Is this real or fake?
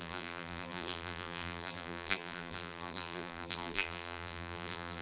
fake